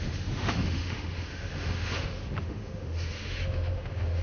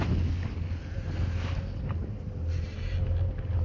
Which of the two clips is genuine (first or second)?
second